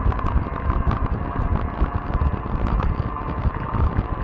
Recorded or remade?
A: recorded